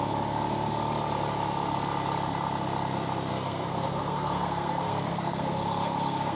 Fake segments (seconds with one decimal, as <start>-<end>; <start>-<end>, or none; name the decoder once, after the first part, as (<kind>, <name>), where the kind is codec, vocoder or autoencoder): 3.3-6.4 (codec, SNAC)